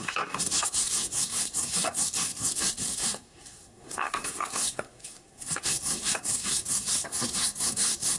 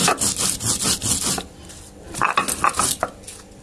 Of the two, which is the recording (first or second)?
second